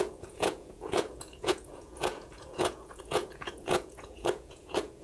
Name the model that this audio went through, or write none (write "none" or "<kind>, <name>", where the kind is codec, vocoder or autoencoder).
vocoder, Vocos